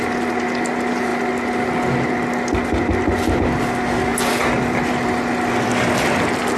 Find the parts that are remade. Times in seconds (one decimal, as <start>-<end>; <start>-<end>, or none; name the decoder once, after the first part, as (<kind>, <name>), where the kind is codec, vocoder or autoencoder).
none